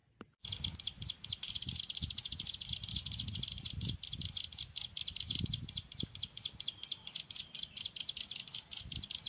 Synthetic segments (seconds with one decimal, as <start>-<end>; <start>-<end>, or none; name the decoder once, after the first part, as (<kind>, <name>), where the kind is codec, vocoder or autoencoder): none